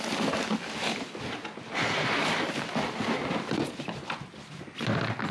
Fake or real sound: real